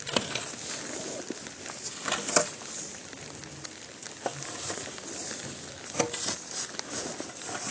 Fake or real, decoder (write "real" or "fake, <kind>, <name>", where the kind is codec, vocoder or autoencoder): real